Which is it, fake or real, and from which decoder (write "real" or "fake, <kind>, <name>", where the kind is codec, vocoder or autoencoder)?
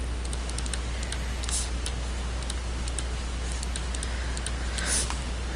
real